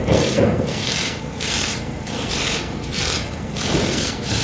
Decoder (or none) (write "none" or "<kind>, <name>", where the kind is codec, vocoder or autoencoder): codec, SNAC